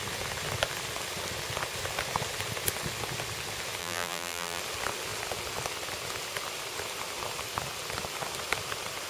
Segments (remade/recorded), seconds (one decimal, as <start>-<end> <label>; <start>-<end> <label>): 0.0-3.8 recorded; 3.8-4.6 remade; 4.6-9.1 recorded